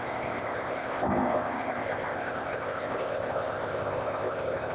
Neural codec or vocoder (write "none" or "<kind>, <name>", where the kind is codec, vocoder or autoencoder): codec, ZipCodec